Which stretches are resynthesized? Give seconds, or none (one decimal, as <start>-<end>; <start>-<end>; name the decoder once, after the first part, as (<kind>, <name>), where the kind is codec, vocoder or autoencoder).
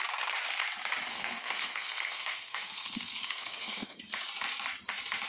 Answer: 1.1-4.0 (codec, SNAC)